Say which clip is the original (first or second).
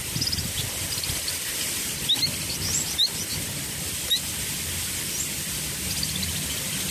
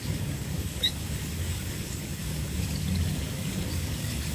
first